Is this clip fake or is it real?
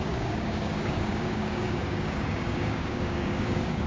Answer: fake